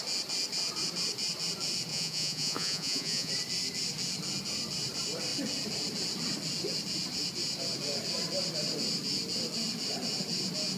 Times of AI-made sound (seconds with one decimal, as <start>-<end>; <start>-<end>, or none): 1.9-3.3